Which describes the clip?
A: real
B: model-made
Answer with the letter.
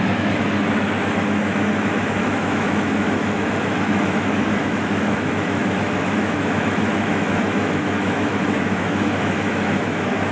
B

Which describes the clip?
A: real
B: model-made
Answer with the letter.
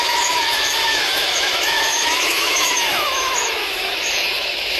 B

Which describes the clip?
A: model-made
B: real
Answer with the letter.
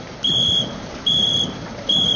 B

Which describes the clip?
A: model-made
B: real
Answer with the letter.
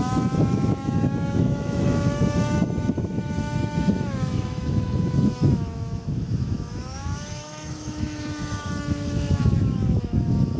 A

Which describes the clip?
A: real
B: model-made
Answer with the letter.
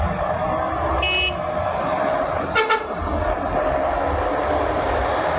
A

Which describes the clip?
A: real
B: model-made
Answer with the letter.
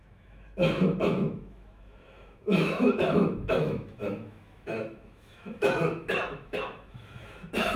B